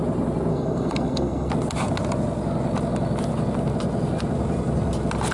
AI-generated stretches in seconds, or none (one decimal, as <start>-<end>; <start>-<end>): 0.5-1.5